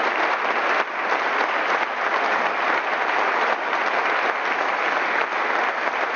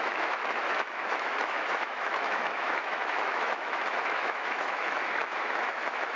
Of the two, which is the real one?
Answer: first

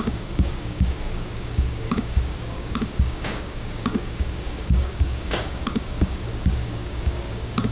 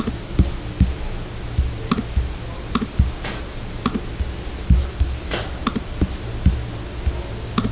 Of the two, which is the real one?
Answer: second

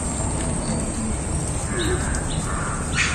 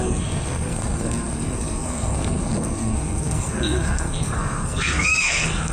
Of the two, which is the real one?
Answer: first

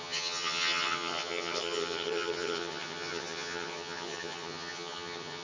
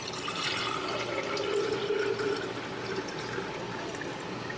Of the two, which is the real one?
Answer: second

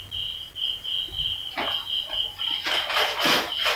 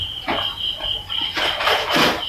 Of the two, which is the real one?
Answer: first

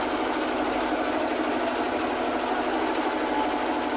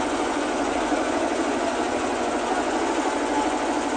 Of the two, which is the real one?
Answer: first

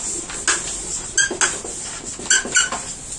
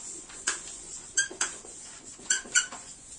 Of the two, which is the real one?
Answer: first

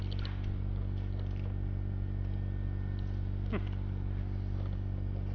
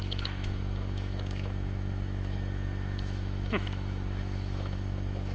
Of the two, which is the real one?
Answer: first